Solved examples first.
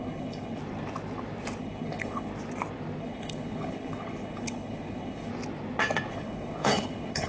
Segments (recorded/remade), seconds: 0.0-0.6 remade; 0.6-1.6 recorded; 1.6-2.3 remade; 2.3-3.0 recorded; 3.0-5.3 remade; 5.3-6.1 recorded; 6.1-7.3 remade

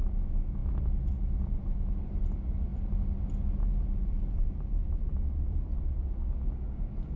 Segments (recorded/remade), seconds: 0.0-0.6 recorded; 0.6-1.9 remade; 1.9-4.8 recorded; 4.8-6.3 remade; 6.3-7.2 recorded

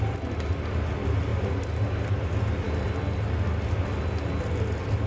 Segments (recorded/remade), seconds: 0.0-5.1 recorded